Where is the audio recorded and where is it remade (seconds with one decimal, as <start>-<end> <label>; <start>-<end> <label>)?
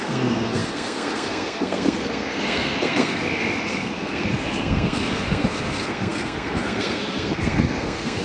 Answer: 0.0-8.2 remade